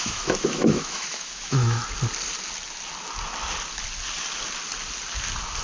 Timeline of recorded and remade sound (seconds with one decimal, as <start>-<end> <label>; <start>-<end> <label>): 0.0-1.8 remade; 1.8-5.6 recorded